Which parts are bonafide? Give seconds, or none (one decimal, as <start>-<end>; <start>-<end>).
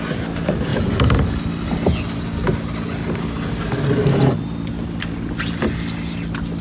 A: 0.0-6.6